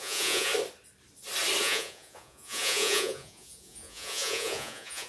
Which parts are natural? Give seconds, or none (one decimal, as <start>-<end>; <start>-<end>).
0.5-1.6